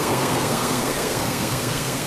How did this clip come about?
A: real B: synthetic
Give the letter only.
B